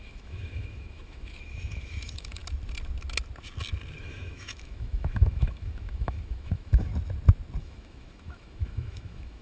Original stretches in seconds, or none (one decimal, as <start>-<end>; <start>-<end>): 2.4-4.0; 6.9-7.6